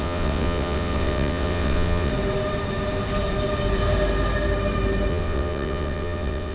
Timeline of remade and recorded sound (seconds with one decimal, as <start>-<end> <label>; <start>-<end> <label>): 0.0-2.1 remade; 2.1-5.1 recorded; 5.1-6.5 remade